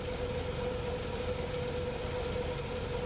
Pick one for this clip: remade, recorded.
recorded